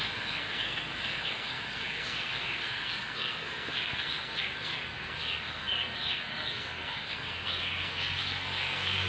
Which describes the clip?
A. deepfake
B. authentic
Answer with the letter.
A